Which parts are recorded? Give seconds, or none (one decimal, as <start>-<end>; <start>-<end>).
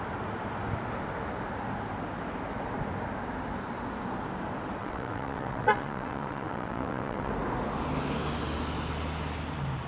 0.0-4.8; 7.3-9.9